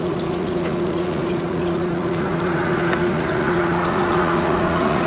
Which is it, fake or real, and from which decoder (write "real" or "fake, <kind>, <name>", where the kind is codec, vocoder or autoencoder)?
fake, vocoder, Vocos